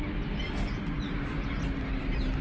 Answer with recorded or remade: recorded